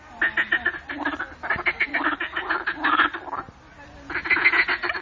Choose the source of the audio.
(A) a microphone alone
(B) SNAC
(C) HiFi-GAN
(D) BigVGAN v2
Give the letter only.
A